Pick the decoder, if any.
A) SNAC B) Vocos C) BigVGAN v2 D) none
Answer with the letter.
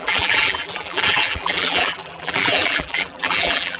C